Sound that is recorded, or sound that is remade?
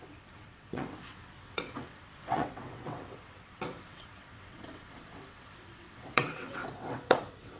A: remade